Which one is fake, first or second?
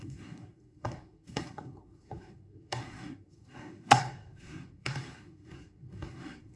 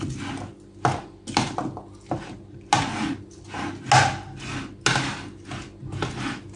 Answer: first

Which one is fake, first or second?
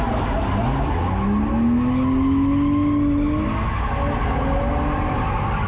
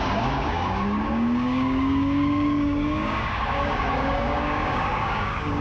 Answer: second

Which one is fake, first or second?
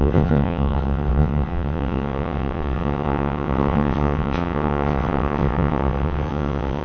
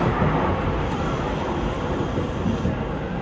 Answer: first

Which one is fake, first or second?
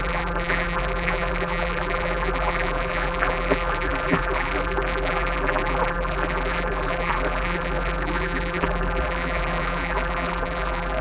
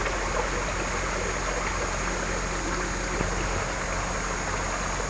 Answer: first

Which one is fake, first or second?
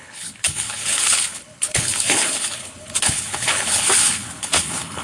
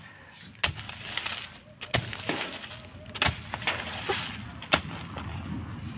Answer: first